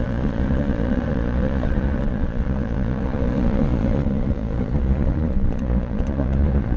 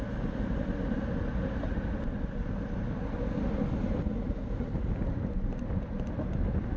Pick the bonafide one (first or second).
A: second